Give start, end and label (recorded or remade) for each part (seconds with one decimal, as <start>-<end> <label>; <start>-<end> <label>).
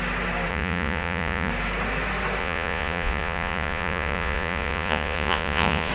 0.0-0.5 recorded; 0.5-1.5 remade; 1.5-2.4 recorded; 2.4-5.9 remade